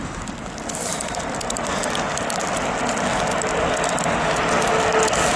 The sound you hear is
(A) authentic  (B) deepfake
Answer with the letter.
A